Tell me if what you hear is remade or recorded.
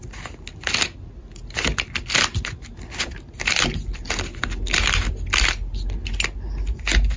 recorded